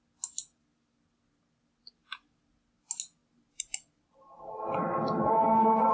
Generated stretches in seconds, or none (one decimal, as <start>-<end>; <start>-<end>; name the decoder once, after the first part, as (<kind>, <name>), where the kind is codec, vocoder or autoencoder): none